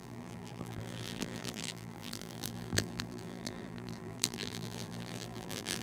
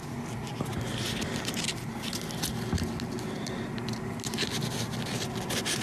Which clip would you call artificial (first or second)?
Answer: first